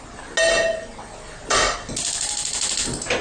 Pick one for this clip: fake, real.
real